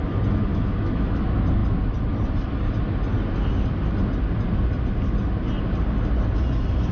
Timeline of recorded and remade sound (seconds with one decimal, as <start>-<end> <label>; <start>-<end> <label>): 0.0-0.5 recorded; 0.5-1.2 remade; 1.2-6.9 recorded